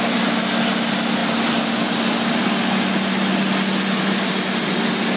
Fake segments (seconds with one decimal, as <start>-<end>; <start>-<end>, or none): none